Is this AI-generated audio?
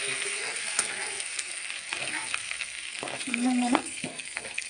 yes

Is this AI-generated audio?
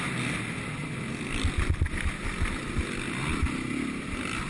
no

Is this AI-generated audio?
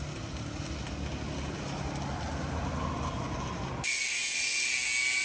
no